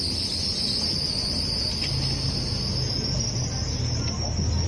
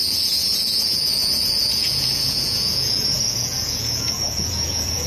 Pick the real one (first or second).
first